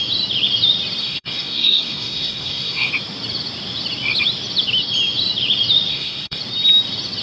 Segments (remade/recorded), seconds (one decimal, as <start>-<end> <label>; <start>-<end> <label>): 0.0-1.0 recorded; 1.0-2.9 remade; 2.9-5.9 recorded; 5.9-6.4 remade; 6.4-7.2 recorded